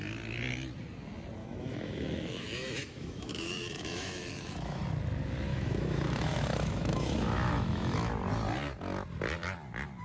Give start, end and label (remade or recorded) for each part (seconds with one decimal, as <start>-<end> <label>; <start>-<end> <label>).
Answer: 0.0-1.4 recorded; 1.4-4.8 remade; 4.8-5.5 recorded; 5.5-8.1 remade; 8.1-10.0 recorded